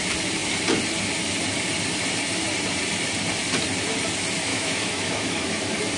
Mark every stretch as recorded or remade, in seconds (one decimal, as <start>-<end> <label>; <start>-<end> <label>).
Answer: 0.0-4.5 recorded; 4.5-5.6 remade; 5.6-6.0 recorded